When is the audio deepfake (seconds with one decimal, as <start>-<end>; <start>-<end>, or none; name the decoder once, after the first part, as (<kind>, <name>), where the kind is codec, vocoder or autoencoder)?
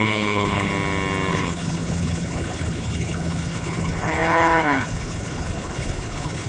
0.0-0.7 (codec, HILCodec); 1.3-6.5